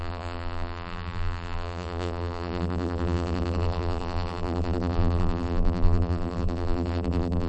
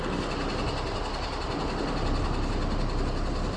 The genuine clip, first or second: second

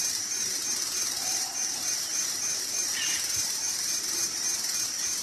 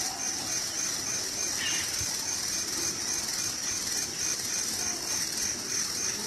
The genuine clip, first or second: second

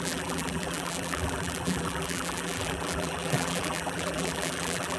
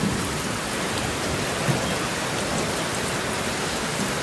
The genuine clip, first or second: second